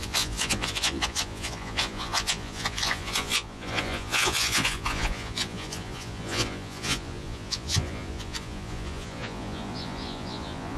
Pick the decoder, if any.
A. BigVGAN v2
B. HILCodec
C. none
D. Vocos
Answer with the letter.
D